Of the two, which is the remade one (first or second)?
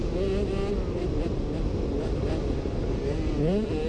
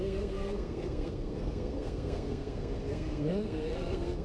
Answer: second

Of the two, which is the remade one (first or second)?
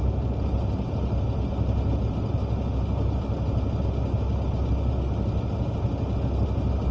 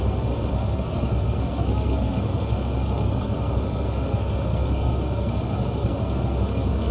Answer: second